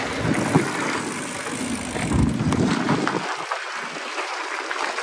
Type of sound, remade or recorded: recorded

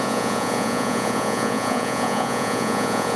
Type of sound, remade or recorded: remade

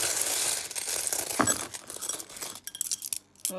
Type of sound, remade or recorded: recorded